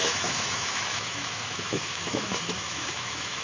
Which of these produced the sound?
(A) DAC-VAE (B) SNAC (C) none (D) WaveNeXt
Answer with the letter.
A